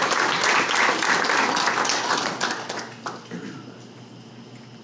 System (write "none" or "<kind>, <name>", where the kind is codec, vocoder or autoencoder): none